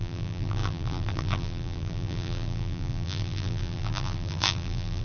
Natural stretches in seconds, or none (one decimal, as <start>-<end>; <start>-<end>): none